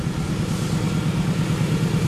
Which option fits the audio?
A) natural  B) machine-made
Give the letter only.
A